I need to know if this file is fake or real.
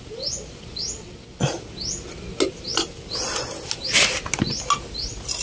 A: real